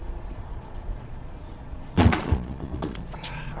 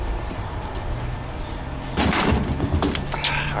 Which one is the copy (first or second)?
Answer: first